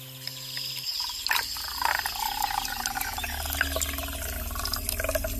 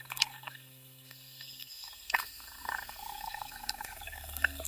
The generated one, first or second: second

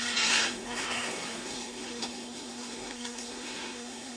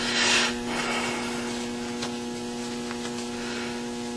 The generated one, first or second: first